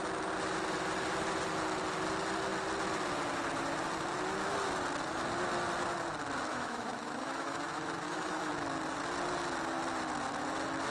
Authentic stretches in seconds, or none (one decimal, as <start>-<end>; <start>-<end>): 0.0-6.5; 8.5-10.9